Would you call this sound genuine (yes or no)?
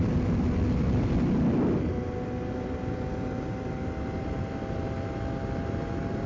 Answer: yes